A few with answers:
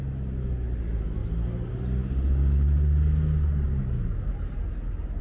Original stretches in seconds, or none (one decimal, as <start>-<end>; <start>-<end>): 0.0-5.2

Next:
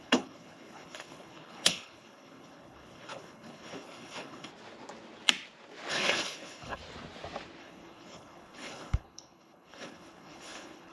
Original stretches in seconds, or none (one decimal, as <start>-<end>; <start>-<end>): 4.5-5.9; 6.8-7.6

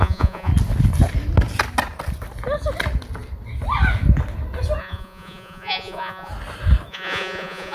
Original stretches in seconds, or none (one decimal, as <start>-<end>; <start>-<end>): 0.5-4.8; 6.3-6.9